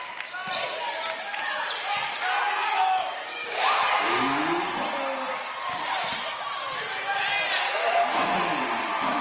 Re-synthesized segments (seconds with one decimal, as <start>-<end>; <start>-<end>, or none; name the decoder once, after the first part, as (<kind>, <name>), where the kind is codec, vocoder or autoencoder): 2.6-4.4 (codec, DAC)